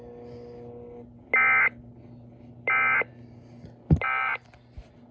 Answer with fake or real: real